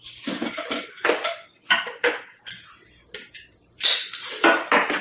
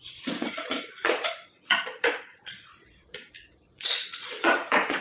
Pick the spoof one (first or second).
second